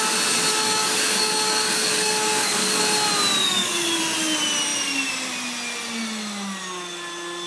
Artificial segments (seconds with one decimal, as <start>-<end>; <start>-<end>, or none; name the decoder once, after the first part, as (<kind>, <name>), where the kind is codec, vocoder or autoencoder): 0.5-2.8 (codec, DAC); 3.4-4.0